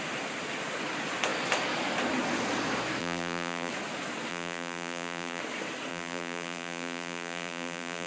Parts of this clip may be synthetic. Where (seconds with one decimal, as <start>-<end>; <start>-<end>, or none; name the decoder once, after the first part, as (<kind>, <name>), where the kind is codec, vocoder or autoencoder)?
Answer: 3.0-3.7 (vocoder, BigVGAN v2); 4.3-5.4; 5.9-8.1